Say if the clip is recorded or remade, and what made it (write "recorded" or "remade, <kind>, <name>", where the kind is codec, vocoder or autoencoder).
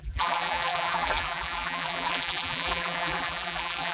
remade, vocoder, BigVGAN v2